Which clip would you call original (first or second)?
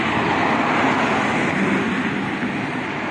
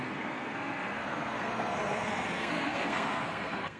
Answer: first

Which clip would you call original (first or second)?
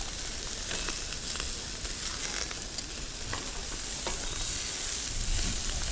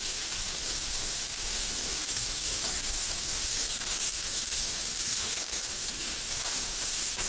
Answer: first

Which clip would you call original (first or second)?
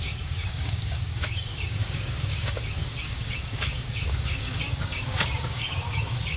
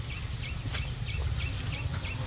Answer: second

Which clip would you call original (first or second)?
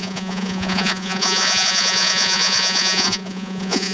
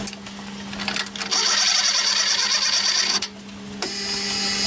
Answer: second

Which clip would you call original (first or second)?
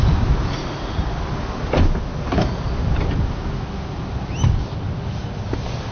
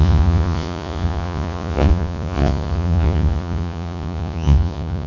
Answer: first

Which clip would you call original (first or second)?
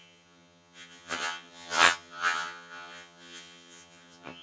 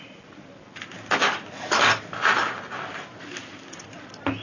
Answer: second